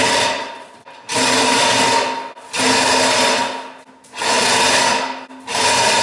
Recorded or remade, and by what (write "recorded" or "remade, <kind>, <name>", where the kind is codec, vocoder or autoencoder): recorded